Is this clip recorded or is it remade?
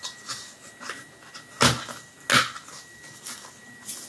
recorded